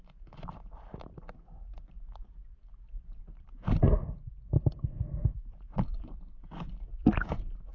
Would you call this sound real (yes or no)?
yes